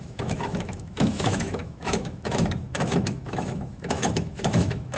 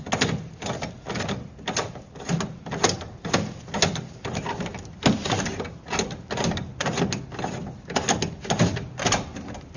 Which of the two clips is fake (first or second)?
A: first